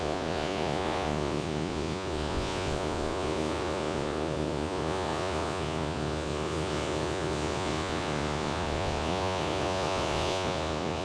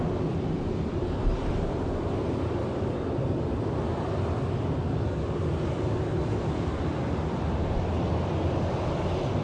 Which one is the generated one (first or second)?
first